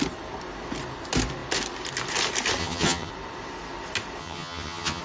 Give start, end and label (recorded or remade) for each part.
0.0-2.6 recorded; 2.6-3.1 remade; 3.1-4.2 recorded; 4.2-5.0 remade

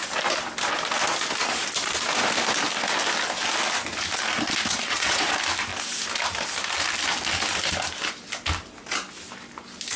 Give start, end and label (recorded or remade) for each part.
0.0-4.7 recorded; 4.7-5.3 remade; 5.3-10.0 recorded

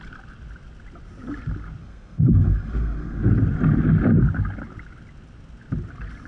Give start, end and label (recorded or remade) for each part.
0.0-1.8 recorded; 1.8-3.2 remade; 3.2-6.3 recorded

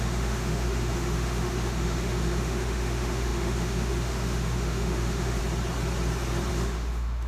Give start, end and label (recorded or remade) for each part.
0.0-5.4 remade; 5.4-6.5 recorded; 6.5-7.3 remade

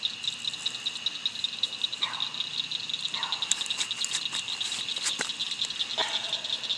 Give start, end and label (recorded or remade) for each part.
0.0-6.8 recorded

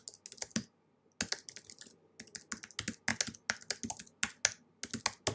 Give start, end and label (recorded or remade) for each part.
0.0-5.3 recorded